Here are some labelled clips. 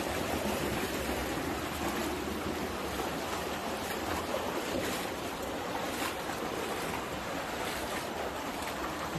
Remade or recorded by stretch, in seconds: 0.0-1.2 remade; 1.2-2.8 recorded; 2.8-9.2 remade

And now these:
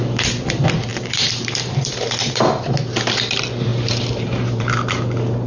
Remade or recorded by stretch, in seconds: 0.0-0.9 recorded; 0.9-2.7 remade; 2.7-3.7 recorded; 3.7-5.0 remade; 5.0-5.5 recorded